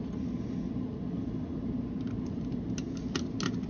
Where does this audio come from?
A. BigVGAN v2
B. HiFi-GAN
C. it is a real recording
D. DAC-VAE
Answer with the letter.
C